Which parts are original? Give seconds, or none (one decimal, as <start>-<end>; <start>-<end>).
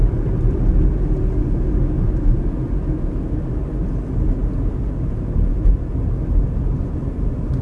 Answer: 0.0-7.6